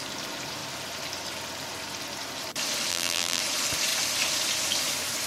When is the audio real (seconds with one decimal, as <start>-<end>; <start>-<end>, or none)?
0.0-2.9; 3.4-5.3

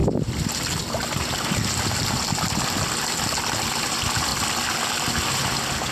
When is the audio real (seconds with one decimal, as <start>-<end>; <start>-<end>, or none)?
0.0-5.9

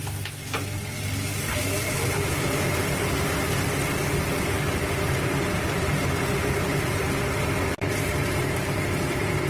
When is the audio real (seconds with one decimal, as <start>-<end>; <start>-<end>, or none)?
0.0-1.3; 3.0-4.0